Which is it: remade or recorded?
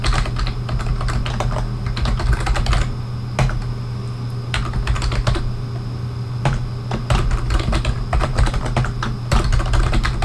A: recorded